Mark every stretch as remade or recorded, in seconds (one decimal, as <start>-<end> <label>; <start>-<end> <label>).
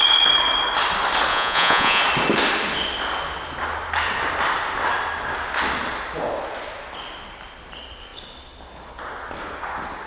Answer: 0.0-1.3 recorded; 1.3-2.0 remade; 2.0-10.1 recorded